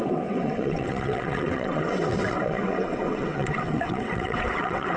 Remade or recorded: remade